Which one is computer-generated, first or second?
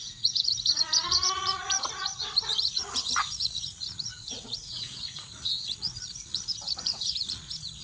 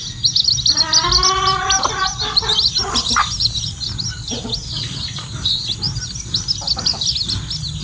first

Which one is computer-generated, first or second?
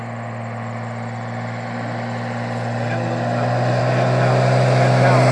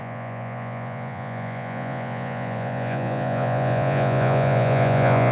second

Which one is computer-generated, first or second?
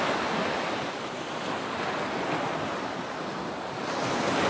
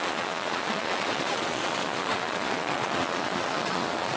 second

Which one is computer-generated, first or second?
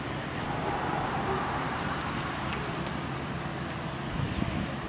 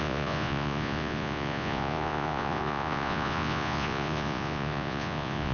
second